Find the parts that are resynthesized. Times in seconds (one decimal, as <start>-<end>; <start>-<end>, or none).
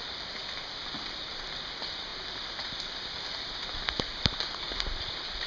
0.0-5.5